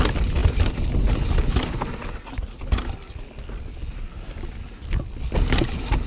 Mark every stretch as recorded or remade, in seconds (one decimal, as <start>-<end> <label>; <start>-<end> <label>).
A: 0.0-6.1 recorded